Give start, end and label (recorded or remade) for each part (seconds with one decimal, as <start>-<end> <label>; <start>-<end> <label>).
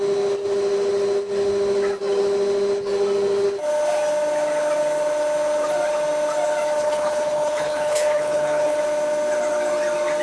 0.0-6.8 recorded; 6.8-8.8 remade; 8.8-10.2 recorded